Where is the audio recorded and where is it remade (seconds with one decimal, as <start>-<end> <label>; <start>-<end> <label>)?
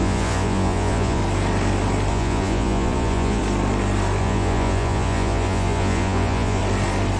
0.0-1.2 remade; 1.2-2.1 recorded; 2.1-3.4 remade; 3.4-4.2 recorded; 4.2-6.6 remade; 6.6-7.2 recorded